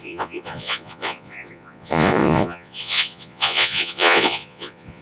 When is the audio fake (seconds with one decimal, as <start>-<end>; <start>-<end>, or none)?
0.0-5.0